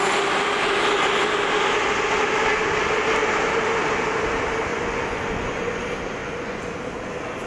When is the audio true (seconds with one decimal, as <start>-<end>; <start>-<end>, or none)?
0.0-4.7; 5.8-6.2; 6.8-7.5